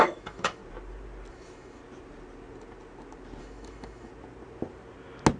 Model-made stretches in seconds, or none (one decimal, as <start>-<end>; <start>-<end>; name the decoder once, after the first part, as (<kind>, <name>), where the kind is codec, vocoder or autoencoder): 0.0-0.6 (autoencoder, DAC-VAE); 1.3-1.8; 3.4-4.1